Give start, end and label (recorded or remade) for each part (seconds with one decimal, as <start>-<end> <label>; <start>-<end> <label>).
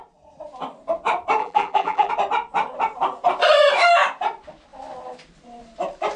0.0-1.4 recorded; 1.4-2.1 remade; 2.1-6.2 recorded